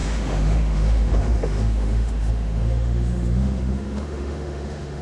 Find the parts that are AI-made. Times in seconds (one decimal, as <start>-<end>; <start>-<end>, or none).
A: 0.0-5.0